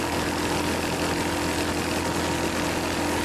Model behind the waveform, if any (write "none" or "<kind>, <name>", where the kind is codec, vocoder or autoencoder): none